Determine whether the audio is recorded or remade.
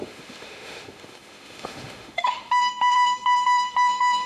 remade